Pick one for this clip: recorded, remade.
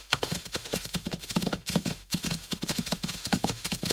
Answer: remade